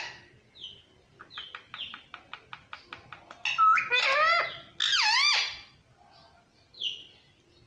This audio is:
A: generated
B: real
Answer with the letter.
B